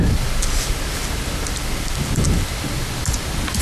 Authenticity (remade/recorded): recorded